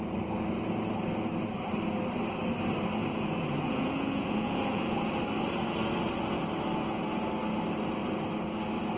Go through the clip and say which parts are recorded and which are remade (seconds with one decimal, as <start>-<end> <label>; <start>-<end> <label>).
0.0-3.0 recorded; 3.0-5.2 remade; 5.2-9.0 recorded